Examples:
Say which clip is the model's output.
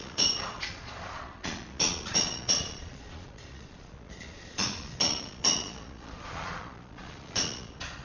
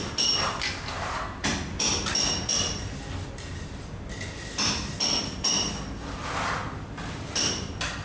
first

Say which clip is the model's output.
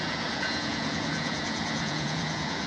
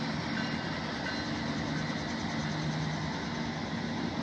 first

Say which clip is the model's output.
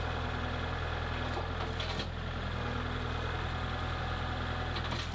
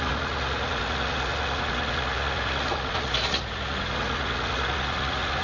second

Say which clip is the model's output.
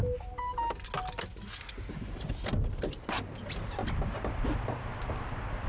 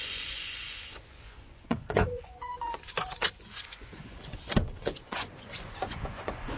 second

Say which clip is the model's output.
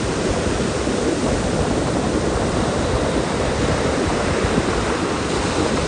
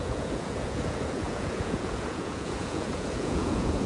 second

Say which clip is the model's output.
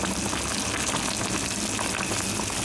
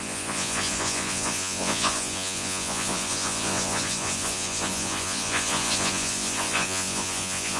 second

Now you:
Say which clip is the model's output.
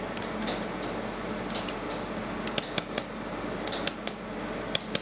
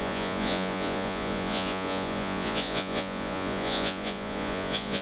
second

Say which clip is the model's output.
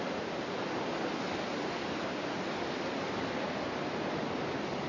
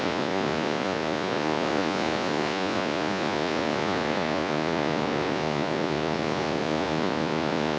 second